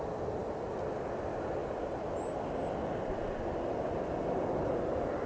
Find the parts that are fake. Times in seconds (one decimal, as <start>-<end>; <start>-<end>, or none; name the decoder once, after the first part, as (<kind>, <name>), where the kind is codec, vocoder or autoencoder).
none